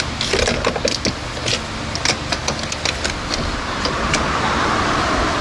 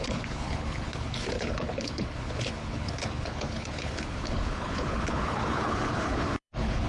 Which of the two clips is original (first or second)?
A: first